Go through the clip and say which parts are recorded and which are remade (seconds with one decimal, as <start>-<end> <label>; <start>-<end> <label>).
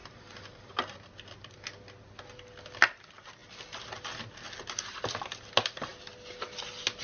0.0-1.1 remade; 1.1-7.0 recorded